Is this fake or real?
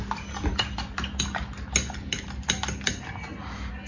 real